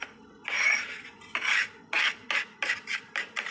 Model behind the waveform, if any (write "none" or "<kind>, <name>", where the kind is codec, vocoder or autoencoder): none